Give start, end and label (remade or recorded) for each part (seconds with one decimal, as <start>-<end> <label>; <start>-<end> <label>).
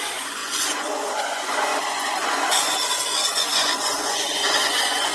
0.0-5.1 remade